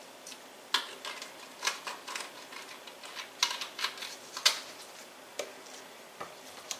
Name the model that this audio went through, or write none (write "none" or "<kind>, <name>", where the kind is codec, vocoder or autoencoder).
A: none